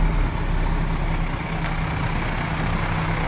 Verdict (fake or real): real